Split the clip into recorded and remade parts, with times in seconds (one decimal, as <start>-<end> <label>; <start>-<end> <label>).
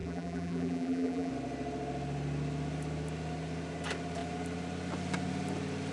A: 0.0-1.3 remade; 1.3-5.9 recorded